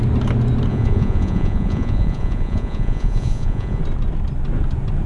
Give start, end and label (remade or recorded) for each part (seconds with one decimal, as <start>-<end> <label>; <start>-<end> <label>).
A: 0.0-0.7 recorded; 0.7-3.8 remade; 3.8-5.1 recorded